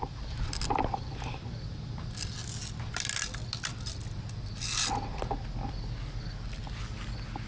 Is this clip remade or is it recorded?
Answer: recorded